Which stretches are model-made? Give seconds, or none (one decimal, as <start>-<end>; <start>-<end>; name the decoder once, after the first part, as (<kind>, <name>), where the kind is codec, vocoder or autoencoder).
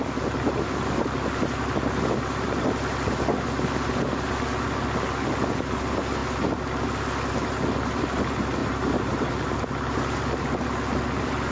8.6-9.3 (vocoder, BigVGAN v2)